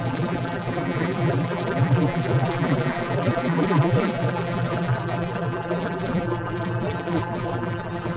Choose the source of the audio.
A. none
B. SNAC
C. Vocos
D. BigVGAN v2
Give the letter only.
D